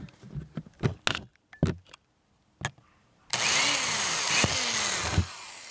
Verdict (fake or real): real